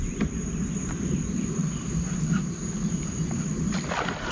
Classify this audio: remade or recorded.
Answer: recorded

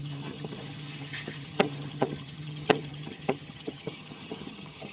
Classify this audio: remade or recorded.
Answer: remade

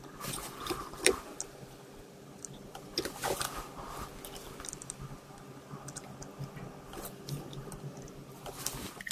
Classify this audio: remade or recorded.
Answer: recorded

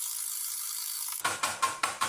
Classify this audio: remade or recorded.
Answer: remade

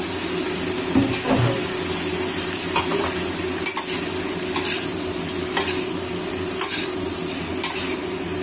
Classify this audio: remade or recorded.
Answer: recorded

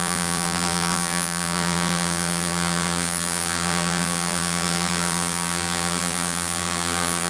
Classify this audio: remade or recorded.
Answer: remade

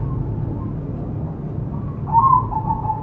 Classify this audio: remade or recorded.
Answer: recorded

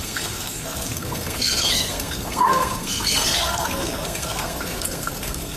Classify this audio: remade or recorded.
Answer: remade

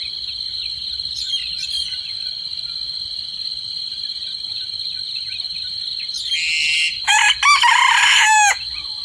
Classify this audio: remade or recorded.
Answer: recorded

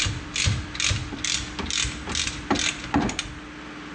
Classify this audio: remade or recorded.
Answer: recorded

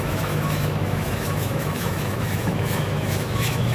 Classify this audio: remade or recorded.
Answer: remade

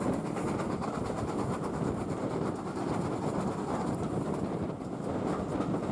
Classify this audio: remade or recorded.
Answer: recorded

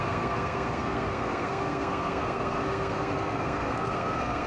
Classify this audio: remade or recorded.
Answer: remade